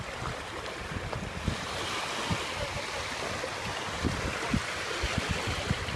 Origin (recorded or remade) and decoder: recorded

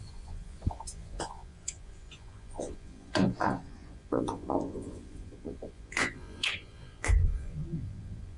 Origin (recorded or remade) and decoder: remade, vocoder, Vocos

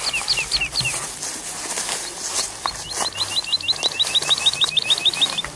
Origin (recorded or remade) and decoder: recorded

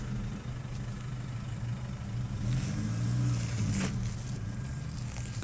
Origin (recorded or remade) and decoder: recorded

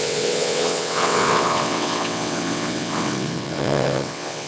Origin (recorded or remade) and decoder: remade, vocoder, WaveNeXt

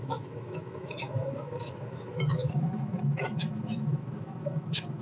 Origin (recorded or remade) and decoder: remade, autoencoder, DAC-VAE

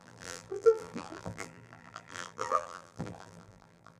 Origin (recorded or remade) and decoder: remade, vocoder, BigVGAN v2